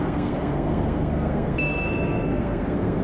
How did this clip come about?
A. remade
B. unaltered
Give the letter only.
A